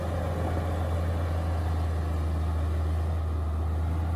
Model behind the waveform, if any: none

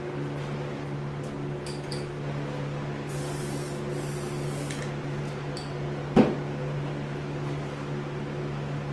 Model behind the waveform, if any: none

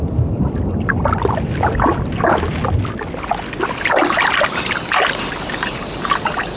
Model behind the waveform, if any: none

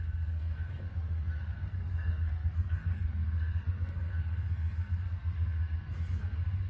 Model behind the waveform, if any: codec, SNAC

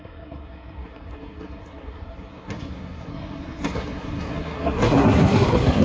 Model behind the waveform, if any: codec, SNAC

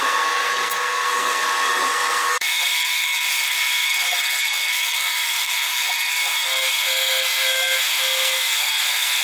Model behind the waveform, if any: codec, SNAC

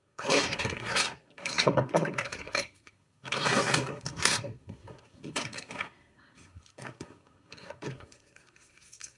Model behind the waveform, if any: codec, SNAC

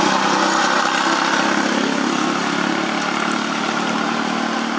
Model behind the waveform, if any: none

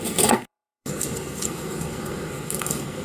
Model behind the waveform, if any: codec, SNAC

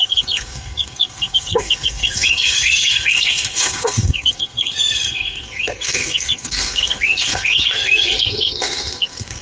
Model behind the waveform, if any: codec, SNAC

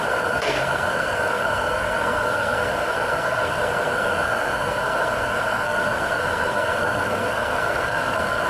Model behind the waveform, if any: codec, SNAC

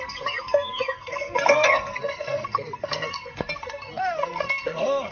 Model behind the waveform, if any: codec, SNAC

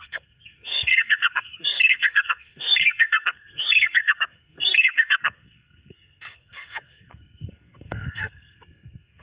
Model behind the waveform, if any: codec, SNAC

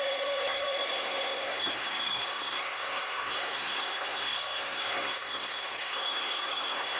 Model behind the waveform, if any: codec, SNAC